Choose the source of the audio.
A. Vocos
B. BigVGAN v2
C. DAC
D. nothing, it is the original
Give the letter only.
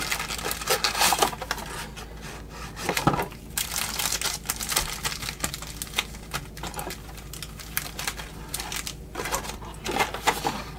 D